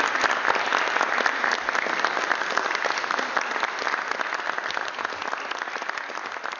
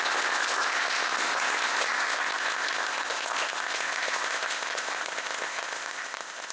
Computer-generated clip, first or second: second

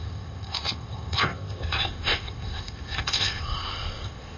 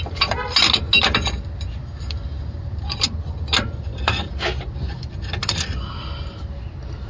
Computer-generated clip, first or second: first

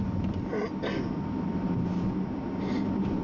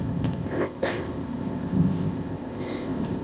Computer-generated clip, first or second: second